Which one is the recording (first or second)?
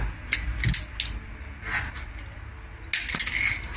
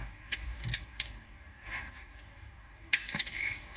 first